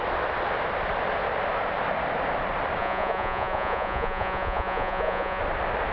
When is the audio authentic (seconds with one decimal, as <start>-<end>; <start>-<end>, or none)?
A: 0.0-2.8; 5.4-5.9